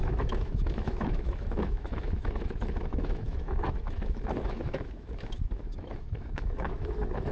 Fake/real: fake